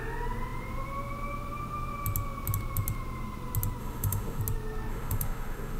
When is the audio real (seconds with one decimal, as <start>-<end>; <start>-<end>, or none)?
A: 0.0-3.8; 4.4-4.9